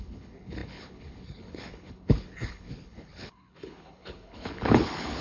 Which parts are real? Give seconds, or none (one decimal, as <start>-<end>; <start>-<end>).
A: none